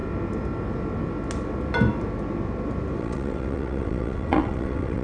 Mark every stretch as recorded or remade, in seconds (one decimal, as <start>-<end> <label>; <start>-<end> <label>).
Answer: 0.0-3.0 recorded; 3.0-5.0 remade

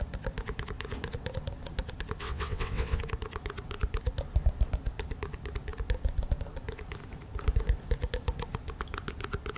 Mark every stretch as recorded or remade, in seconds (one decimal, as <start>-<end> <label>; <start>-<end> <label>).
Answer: 0.0-2.2 recorded; 2.2-3.0 remade; 3.0-9.6 recorded

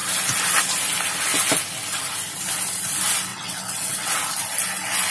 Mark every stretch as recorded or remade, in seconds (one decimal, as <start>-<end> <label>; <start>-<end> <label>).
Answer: 0.0-3.3 recorded; 3.3-4.1 remade; 4.1-5.1 recorded

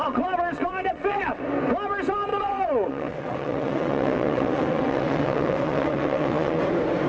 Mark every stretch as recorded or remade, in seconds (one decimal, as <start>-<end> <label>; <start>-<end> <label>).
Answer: 0.0-1.4 remade; 1.4-2.3 recorded; 2.3-6.6 remade; 6.6-7.1 recorded

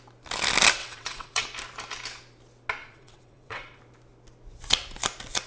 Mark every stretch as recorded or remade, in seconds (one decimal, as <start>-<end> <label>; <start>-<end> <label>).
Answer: 0.0-0.8 recorded; 0.8-1.4 remade; 1.4-2.8 recorded; 2.8-3.8 remade; 3.8-5.5 recorded

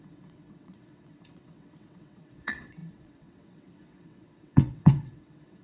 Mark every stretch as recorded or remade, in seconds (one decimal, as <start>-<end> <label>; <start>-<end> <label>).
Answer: 0.0-5.6 remade